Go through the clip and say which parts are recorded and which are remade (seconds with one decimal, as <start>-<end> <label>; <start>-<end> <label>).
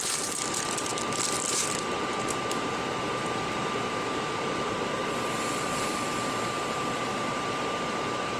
0.0-0.9 remade; 0.9-1.5 recorded; 1.5-5.0 remade; 5.0-5.6 recorded; 5.6-8.4 remade